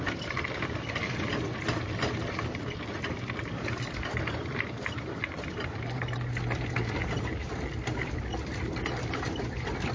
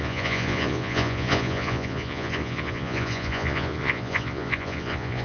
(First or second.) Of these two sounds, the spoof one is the second